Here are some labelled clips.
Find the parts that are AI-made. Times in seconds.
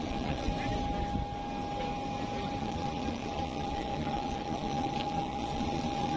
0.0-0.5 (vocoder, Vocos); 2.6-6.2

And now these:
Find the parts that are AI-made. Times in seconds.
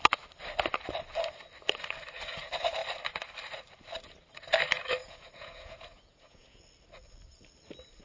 5.0-6.6 (vocoder, Vocos)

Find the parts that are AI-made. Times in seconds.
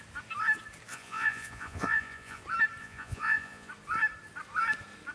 0.9-2.4 (vocoder, Vocos); 2.8-3.7